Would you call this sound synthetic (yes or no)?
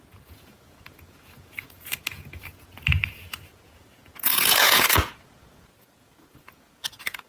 yes